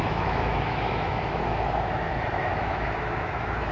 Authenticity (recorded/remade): remade